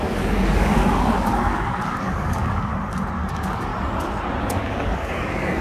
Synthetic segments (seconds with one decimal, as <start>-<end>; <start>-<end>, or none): 0.0-2.7; 3.3-3.7; 4.4-5.6